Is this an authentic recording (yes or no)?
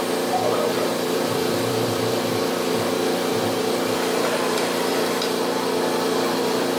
no